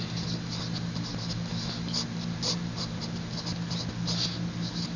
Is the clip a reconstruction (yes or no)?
no